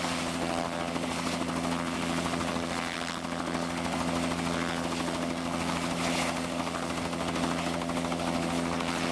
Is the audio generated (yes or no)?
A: no